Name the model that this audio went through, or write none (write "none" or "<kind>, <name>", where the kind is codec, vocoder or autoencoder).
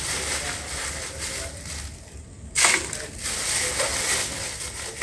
none